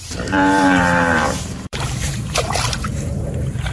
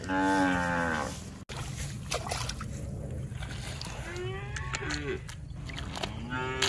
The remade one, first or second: first